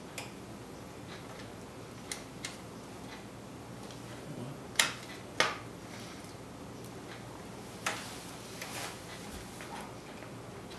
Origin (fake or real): real